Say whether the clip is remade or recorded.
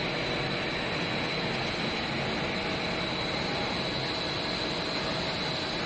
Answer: recorded